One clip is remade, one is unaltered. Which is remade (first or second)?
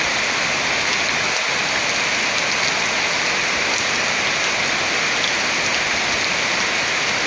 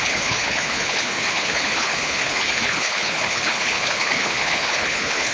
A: second